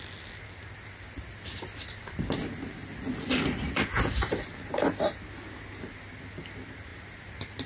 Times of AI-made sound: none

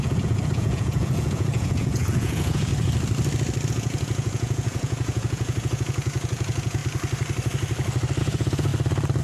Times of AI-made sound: 0.0-2.7 (vocoder, Vocos); 3.7-6.8; 8.2-8.7